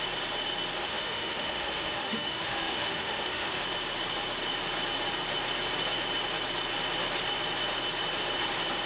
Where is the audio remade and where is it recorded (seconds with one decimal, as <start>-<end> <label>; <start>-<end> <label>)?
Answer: 0.0-0.8 recorded; 0.8-3.6 remade; 3.6-8.9 recorded